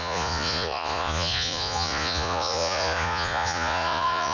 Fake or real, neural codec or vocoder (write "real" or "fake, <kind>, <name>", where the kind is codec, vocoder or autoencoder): fake, vocoder, Vocos